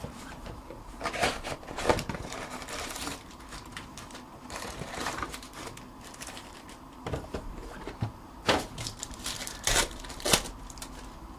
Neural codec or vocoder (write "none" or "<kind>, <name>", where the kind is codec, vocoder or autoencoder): vocoder, BigVGAN v2